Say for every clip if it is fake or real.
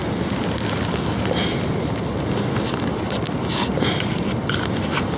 real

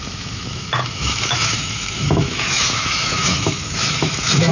fake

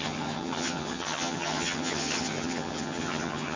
fake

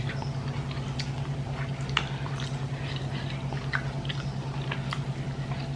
real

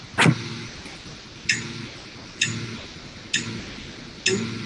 real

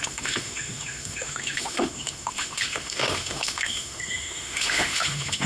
fake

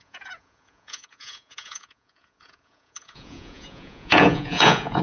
fake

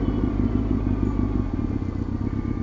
real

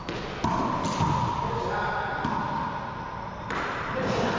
real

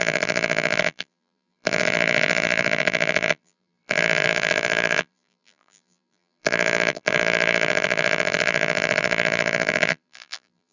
fake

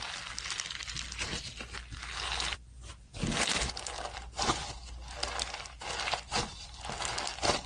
real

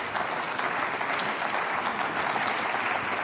real